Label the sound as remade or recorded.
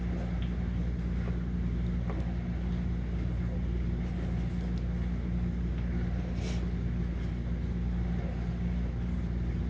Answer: recorded